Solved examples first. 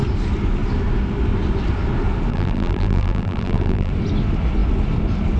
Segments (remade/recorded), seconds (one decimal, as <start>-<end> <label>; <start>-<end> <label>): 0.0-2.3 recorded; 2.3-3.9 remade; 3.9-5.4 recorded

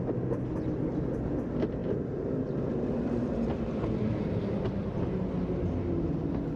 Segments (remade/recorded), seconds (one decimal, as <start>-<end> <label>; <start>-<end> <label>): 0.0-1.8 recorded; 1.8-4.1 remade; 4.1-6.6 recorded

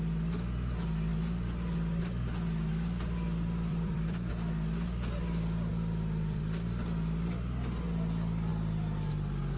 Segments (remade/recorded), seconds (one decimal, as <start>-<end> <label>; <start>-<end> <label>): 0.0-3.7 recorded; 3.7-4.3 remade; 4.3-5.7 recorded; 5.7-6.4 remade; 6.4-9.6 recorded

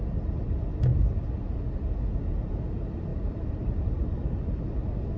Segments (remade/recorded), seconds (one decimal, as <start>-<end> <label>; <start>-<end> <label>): 0.0-3.1 recorded; 3.1-3.7 remade; 3.7-5.2 recorded

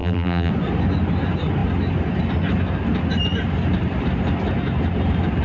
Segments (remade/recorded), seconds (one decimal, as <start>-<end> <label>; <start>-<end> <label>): 0.0-0.5 remade; 0.5-5.4 recorded

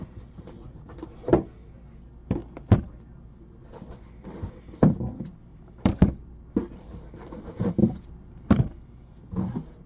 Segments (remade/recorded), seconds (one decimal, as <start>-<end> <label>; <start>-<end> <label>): 0.0-5.5 recorded; 5.5-6.5 remade; 6.5-7.8 recorded; 7.8-8.6 remade; 8.6-9.9 recorded

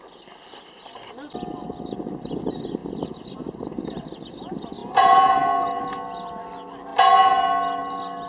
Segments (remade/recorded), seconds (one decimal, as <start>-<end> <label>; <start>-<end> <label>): 0.0-8.3 recorded